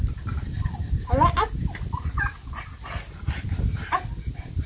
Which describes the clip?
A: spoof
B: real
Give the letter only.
B